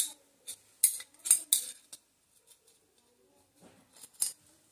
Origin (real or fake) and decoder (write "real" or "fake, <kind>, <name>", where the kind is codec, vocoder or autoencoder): real